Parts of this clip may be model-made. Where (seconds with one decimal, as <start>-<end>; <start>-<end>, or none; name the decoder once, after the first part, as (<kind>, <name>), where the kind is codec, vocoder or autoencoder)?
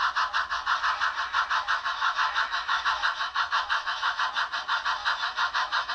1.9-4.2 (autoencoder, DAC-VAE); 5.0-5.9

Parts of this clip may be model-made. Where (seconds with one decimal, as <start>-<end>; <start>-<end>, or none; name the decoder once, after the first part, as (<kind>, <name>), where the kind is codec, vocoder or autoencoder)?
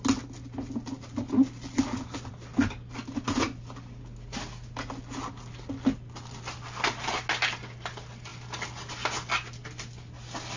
none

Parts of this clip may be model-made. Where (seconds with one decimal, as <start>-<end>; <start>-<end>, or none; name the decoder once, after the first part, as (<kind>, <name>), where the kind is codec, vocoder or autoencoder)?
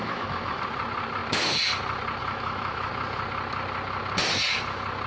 0.0-0.6 (autoencoder, DAC-VAE); 2.2-2.9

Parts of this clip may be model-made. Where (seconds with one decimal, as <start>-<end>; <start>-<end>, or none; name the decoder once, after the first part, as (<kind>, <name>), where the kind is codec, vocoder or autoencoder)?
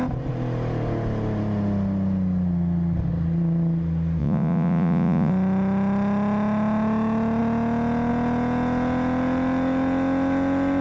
4.2-5.3 (vocoder, Vocos)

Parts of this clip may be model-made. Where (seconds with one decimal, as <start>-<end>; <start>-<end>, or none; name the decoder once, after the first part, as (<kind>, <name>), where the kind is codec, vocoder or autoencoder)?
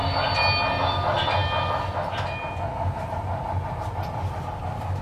none